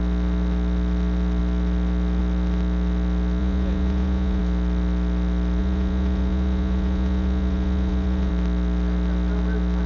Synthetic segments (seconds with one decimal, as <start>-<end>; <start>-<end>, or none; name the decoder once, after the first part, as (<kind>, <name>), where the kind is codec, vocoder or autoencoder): 3.4-4.4 (vocoder, Vocos); 5.6-8.3